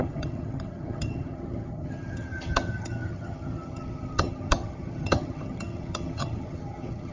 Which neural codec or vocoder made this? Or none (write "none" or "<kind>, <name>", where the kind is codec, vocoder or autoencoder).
vocoder, HiFi-GAN